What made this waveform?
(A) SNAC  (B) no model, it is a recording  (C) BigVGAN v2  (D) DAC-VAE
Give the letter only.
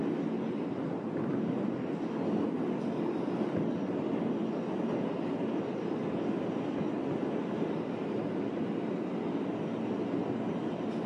B